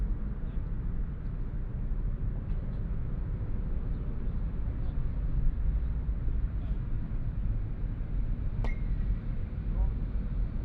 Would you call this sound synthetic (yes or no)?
no